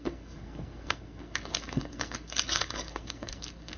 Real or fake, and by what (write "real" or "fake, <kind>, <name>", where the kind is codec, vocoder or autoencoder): fake, codec, SNAC